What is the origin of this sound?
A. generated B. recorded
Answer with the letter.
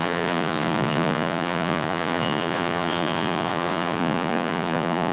A